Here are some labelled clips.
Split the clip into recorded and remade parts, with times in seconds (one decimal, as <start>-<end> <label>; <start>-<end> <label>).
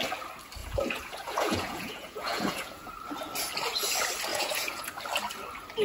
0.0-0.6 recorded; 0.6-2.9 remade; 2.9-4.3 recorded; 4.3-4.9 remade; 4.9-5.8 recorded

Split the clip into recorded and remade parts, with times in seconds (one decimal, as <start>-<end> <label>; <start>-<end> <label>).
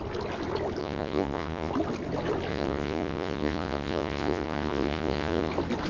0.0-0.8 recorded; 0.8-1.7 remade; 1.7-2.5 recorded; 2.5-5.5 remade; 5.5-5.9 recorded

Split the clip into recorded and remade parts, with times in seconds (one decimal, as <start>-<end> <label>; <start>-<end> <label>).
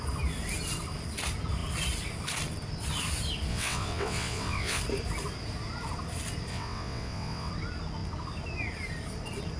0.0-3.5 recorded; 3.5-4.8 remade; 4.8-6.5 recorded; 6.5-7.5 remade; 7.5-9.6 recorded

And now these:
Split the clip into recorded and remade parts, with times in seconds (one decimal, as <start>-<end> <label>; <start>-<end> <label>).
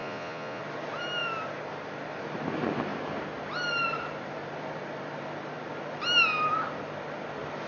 0.0-0.6 remade; 0.6-7.7 recorded